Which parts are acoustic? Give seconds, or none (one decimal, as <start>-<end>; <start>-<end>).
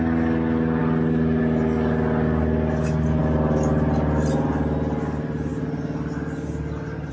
0.0-7.1